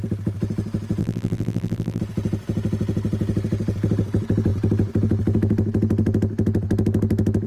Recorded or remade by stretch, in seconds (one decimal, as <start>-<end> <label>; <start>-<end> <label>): 0.0-1.0 recorded; 1.0-2.0 remade; 2.0-7.5 recorded